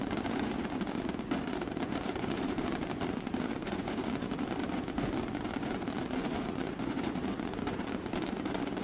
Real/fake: fake